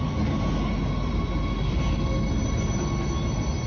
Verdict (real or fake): real